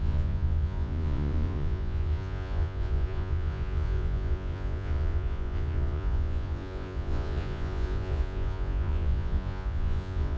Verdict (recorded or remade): remade